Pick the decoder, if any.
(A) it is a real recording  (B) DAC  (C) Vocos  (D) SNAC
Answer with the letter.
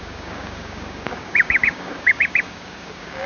B